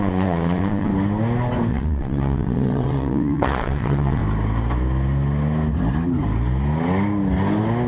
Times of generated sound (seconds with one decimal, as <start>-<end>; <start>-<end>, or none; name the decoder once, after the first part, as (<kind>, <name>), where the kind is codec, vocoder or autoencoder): 0.0-0.9 (vocoder, WaveNeXt); 1.7-4.2